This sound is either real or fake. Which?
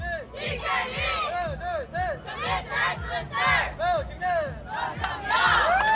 real